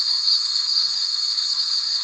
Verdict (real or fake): fake